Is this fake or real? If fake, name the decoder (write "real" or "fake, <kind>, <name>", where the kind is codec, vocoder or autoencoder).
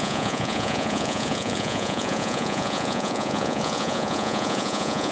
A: fake, vocoder, Vocos